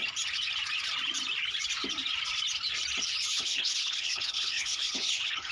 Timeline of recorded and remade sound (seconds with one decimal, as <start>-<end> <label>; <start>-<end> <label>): 0.0-3.3 recorded; 3.3-5.5 remade